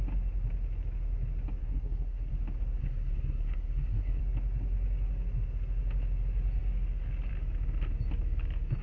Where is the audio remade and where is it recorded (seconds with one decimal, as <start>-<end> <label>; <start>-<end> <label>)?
0.0-1.6 recorded; 1.6-2.3 remade; 2.3-2.8 recorded; 2.8-4.2 remade; 4.2-8.8 recorded